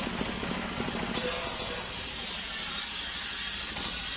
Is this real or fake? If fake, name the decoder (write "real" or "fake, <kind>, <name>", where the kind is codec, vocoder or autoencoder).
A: real